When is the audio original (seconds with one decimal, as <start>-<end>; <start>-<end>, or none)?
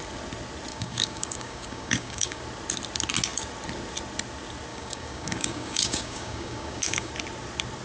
0.0-0.7; 2.4-4.7; 7.1-7.8